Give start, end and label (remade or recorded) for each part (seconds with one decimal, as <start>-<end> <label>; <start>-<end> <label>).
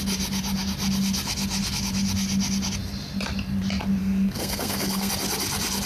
0.0-4.0 recorded; 4.0-5.1 remade; 5.1-5.9 recorded